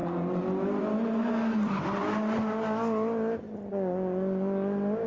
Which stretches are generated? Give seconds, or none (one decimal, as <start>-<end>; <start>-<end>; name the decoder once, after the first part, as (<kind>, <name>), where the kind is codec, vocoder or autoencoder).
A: none